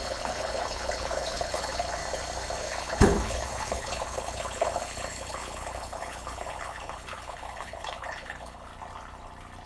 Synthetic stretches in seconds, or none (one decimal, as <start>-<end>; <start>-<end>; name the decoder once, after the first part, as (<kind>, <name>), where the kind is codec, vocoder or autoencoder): 0.0-2.0 (codec, HILCodec); 2.6-8.7